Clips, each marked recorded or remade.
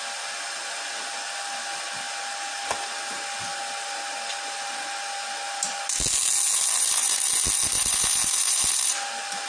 recorded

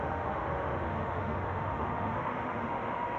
remade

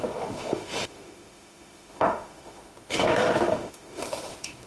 remade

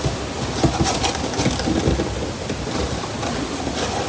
recorded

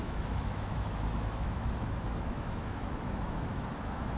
remade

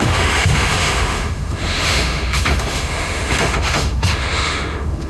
remade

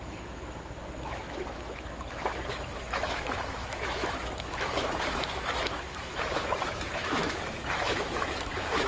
remade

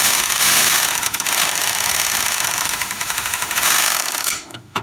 remade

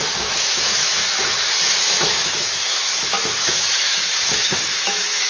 remade